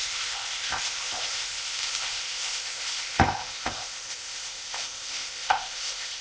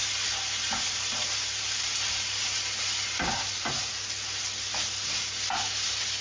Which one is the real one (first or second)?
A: second